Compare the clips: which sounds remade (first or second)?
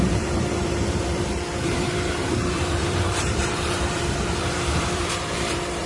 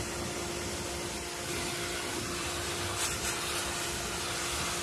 first